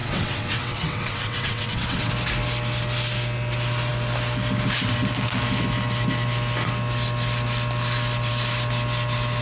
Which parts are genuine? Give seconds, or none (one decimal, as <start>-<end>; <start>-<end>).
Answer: 2.1-9.4